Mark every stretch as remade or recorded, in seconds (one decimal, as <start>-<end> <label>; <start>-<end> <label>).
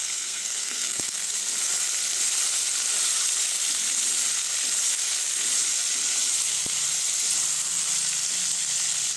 0.0-1.3 remade; 1.3-9.2 recorded